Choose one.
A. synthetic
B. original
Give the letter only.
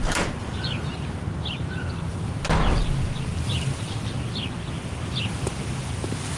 B